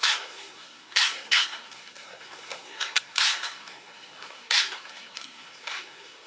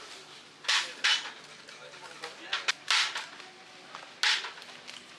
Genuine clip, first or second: second